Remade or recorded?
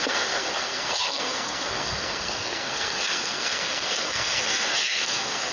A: remade